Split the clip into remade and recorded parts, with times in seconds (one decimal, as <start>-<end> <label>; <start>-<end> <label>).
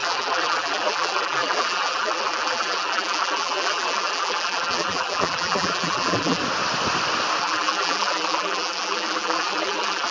0.0-6.4 remade; 6.4-7.4 recorded; 7.4-10.1 remade